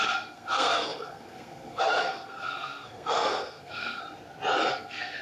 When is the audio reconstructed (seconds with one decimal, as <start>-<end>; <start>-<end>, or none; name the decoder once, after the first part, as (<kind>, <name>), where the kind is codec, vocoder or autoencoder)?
0.0-4.0 (codec, SNAC); 4.7-5.2